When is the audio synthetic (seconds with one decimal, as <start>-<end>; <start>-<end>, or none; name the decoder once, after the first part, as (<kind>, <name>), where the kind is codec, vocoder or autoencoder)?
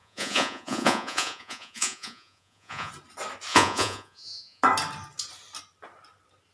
0.0-2.9 (vocoder, Vocos); 3.5-4.6